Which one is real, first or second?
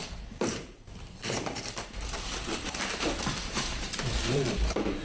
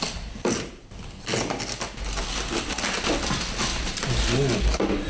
second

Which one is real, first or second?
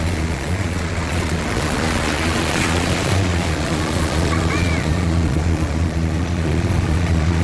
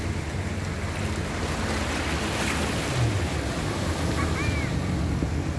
second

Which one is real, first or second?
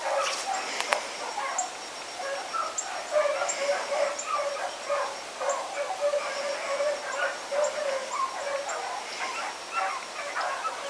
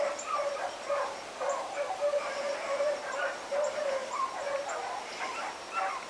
first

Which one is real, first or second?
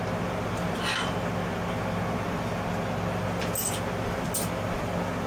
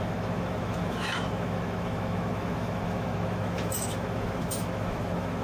first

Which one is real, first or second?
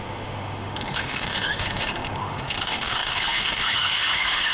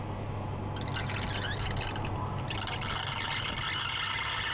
second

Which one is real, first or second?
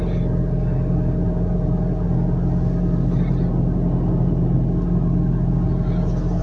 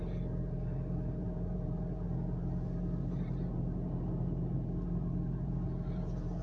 first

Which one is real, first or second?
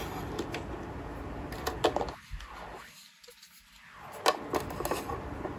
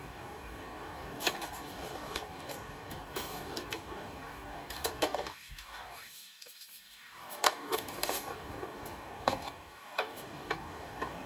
first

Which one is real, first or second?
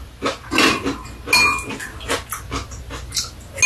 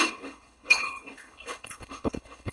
first